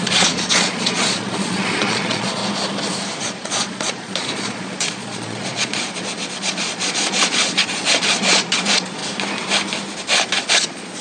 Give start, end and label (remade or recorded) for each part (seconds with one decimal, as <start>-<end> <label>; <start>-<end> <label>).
0.0-2.4 remade; 2.4-3.2 recorded; 3.2-9.0 remade; 9.0-10.5 recorded; 10.5-11.0 remade

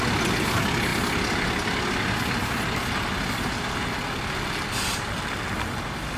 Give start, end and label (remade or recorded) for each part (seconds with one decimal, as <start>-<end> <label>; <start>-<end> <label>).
0.0-6.2 recorded

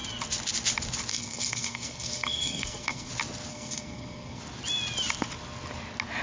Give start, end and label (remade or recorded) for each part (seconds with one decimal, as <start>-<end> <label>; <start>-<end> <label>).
0.0-1.1 recorded; 1.1-3.1 remade; 3.1-3.5 recorded; 3.5-4.4 remade; 4.4-6.2 recorded